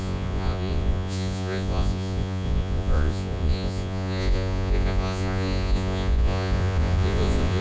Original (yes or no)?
no